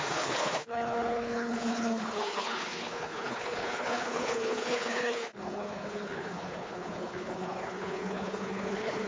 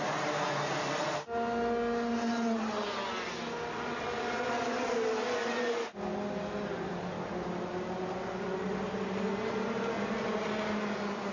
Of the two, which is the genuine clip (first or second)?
second